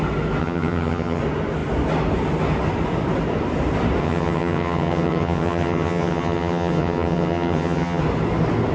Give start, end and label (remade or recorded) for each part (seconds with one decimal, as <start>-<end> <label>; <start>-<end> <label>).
0.0-0.4 recorded; 0.4-1.2 remade; 1.2-4.0 recorded; 4.0-8.0 remade; 8.0-8.7 recorded